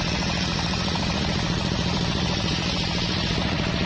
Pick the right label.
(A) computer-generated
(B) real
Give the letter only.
A